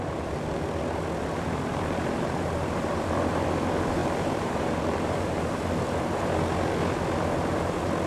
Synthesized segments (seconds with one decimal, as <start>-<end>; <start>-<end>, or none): 1.7-3.0; 4.0-5.6